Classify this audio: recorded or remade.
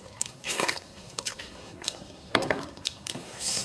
remade